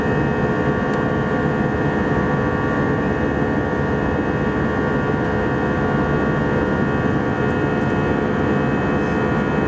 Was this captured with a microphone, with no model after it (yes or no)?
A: yes